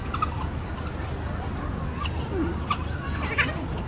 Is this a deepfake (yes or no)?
no